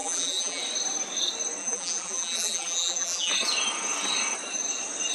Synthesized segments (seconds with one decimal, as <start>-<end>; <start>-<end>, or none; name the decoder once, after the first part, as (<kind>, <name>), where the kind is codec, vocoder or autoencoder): 0.0-0.6 (vocoder, BigVGAN v2); 1.6-3.3